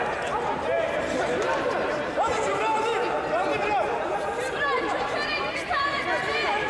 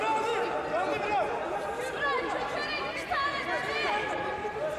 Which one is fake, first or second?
first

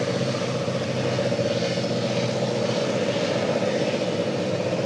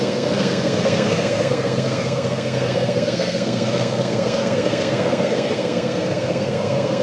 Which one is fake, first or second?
second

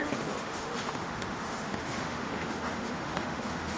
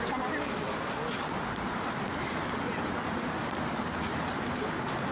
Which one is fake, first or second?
first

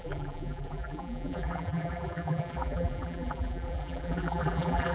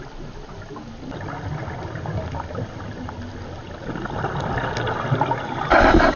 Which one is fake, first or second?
first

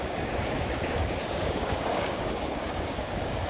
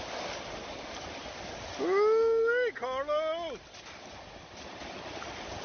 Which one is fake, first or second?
first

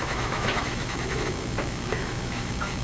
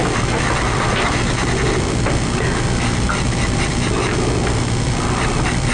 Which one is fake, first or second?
first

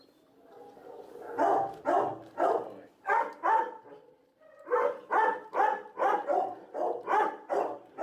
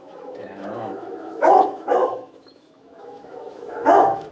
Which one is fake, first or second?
second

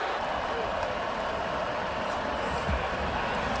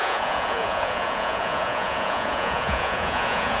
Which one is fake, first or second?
second